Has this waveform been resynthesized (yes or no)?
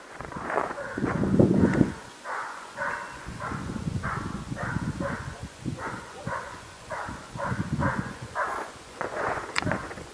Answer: yes